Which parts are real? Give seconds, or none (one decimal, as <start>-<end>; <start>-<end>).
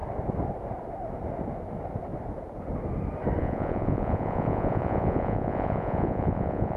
0.0-3.4